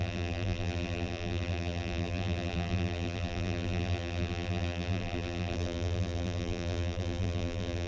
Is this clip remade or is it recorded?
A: remade